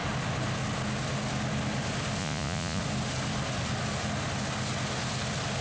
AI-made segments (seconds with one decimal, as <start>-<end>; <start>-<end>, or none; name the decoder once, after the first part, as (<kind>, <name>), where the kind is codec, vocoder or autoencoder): 2.2-2.8 (vocoder, Vocos)